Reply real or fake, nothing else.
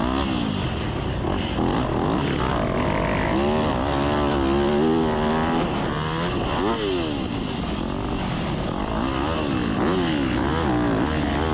real